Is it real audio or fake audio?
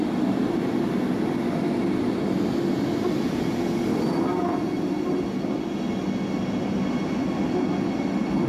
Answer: real